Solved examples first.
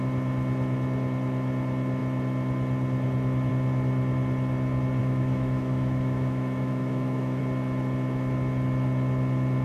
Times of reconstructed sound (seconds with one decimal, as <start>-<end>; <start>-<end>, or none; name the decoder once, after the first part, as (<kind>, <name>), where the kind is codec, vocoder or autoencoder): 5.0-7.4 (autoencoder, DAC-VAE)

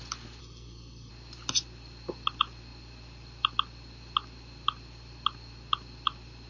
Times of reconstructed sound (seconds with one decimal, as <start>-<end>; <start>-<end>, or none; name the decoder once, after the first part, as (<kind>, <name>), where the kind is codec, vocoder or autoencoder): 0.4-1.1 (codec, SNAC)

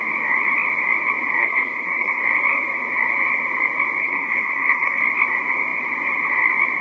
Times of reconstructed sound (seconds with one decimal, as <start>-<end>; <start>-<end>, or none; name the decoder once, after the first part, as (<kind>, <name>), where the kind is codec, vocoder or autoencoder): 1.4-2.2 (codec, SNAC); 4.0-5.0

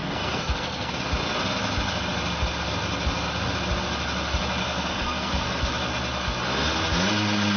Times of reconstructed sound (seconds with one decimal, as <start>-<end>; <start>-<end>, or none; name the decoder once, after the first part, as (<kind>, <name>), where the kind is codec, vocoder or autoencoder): 0.0-0.9 (codec, SNAC); 4.6-5.6

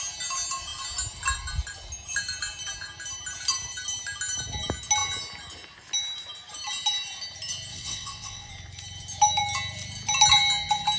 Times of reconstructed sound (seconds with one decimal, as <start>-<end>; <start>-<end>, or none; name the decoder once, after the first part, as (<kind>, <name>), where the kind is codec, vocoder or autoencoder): 7.7-8.5 (vocoder, WaveNeXt)